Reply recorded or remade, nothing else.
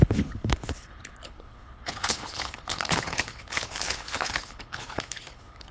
remade